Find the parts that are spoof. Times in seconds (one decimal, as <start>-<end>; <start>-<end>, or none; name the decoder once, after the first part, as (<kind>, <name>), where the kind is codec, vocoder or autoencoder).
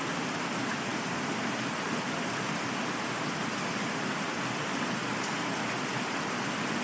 none